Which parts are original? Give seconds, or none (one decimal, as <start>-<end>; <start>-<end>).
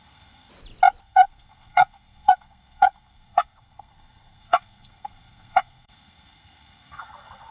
0.5-1.0